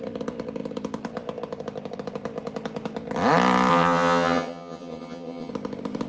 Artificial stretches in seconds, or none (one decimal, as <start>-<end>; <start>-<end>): 3.7-5.5